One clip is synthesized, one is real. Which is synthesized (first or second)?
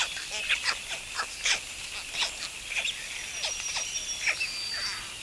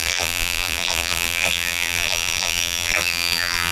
second